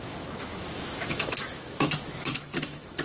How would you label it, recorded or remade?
remade